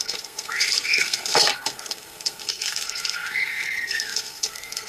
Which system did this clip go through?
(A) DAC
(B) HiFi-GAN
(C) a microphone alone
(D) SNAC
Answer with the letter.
D